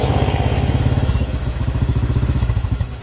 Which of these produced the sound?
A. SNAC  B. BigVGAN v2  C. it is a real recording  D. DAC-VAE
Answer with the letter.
D